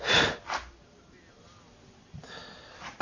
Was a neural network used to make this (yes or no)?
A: no